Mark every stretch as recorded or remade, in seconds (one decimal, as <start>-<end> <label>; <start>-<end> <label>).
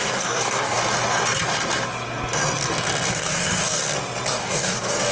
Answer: 0.0-0.8 remade; 0.8-3.1 recorded; 3.1-3.8 remade; 3.8-4.3 recorded; 4.3-5.1 remade